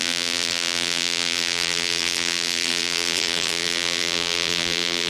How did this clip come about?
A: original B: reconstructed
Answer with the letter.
B